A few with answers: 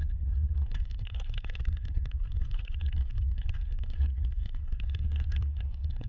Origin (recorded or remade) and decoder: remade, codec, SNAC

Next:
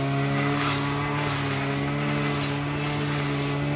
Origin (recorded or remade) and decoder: recorded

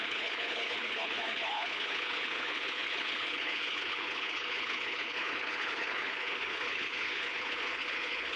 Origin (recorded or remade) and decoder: remade, codec, HILCodec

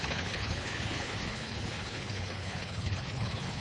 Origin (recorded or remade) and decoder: remade, codec, HILCodec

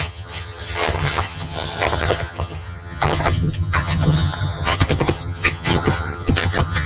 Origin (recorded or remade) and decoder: remade, vocoder, HiFi-GAN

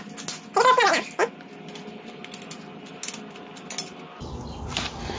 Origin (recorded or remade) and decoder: recorded